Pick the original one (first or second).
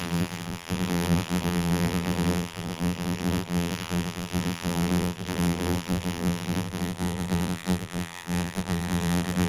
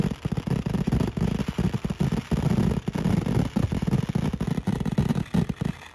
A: second